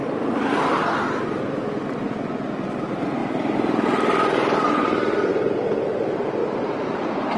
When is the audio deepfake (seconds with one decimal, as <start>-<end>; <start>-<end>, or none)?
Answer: 0.0-0.7; 3.2-5.3; 6.4-7.4